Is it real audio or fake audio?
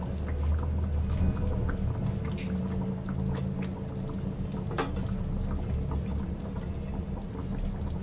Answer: real